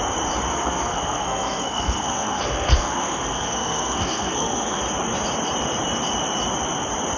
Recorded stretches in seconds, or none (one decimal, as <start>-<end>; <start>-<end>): 0.0-0.5; 4.8-7.2